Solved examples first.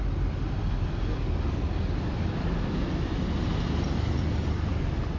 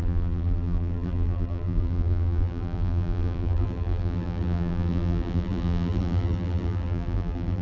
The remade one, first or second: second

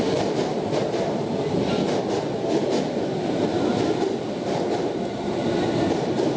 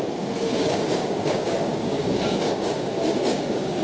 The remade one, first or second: second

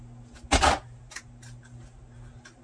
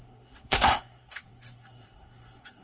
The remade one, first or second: second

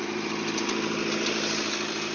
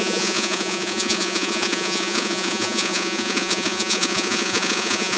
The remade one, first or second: second